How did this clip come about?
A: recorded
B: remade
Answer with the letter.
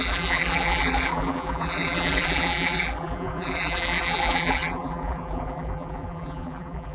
B